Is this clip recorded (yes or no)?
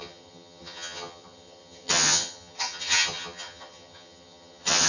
no